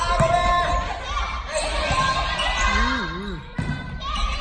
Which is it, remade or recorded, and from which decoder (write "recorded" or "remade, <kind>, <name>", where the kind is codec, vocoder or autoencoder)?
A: recorded